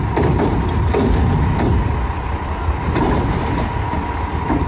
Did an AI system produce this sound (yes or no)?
no